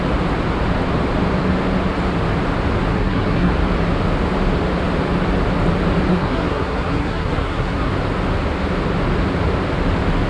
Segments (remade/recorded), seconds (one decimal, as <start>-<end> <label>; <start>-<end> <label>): 0.0-2.9 recorded; 2.9-3.5 remade; 3.5-6.1 recorded; 6.1-7.9 remade; 7.9-10.3 recorded